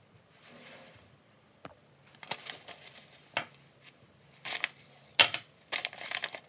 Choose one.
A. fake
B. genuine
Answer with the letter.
B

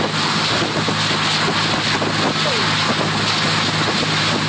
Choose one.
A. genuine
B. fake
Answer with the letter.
A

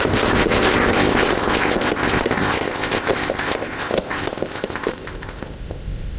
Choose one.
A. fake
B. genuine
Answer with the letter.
A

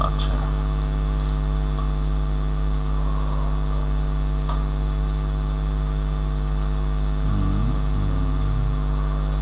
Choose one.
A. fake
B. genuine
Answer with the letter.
B